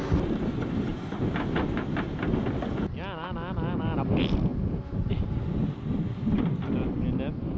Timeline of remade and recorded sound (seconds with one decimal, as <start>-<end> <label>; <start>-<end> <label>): 0.0-7.6 recorded

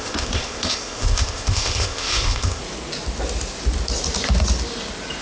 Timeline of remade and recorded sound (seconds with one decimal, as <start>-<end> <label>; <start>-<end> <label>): 0.0-2.6 remade; 2.6-5.2 recorded